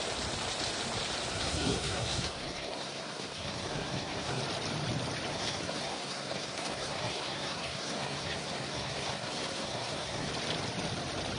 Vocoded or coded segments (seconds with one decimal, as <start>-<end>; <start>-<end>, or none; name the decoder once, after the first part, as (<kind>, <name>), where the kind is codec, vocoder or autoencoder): 1.3-4.4 (codec, SNAC); 5.3-10.3